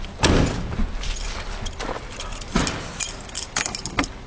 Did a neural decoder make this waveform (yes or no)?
no